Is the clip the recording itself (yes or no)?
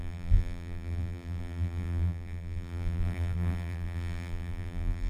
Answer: no